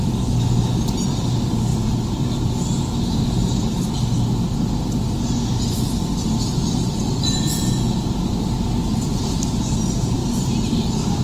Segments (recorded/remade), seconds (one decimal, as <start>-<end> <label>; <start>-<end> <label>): 0.0-7.5 recorded; 7.5-8.0 remade; 8.0-11.2 recorded